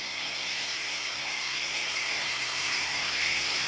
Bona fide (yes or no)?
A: no